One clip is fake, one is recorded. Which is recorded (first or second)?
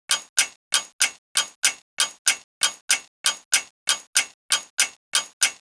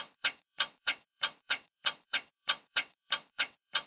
first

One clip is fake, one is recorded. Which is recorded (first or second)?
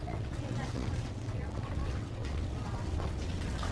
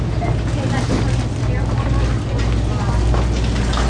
second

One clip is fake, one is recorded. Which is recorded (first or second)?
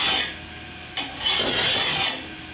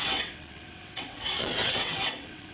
first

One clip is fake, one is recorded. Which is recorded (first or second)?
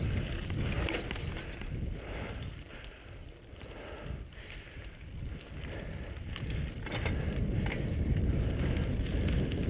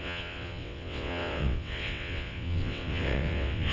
first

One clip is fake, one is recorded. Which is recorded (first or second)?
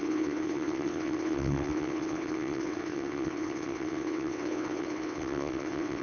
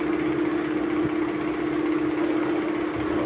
second